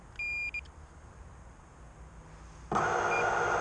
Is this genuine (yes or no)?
yes